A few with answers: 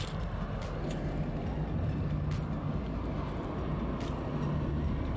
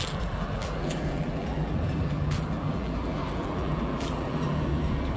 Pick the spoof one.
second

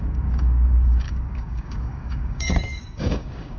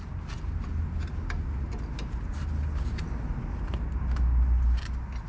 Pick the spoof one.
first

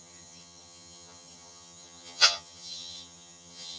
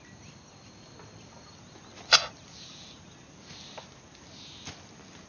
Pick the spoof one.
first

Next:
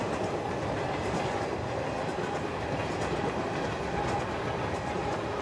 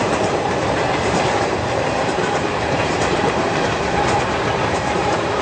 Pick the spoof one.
second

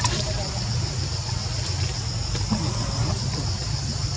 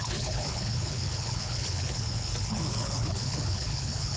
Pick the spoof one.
second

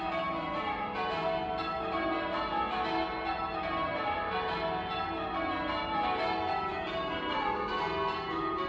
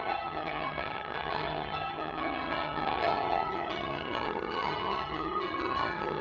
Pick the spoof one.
second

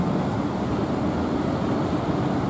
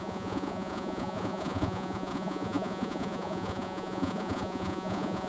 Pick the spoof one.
second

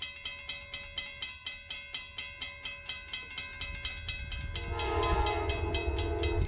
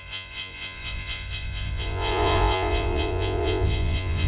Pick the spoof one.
second